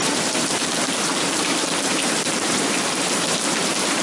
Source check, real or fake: fake